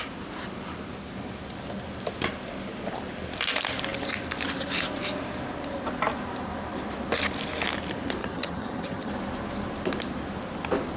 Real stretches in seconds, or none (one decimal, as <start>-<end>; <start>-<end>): 0.0-8.2; 9.1-11.0